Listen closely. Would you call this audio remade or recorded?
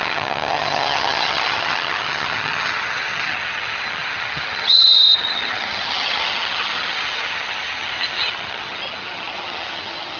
remade